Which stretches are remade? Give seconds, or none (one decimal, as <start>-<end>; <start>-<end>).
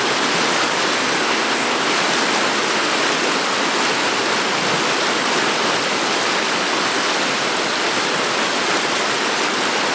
1.2-1.9